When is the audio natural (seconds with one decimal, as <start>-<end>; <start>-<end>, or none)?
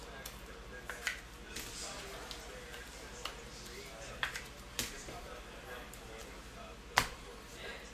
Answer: 0.0-7.9